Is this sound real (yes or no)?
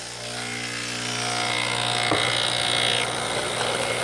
yes